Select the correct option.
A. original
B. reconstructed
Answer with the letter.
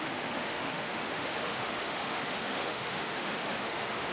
B